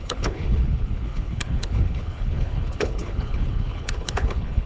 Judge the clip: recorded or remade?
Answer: remade